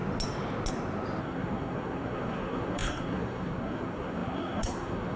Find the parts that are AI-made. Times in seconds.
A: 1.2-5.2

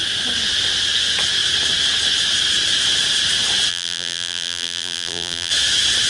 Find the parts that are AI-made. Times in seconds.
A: 3.7-5.5

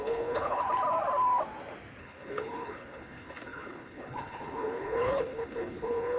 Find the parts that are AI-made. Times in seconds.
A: 0.0-0.6; 2.0-6.2

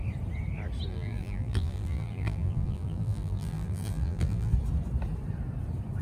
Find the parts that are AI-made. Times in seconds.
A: 0.9-4.5